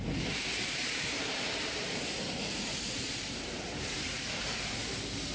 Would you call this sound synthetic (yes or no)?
yes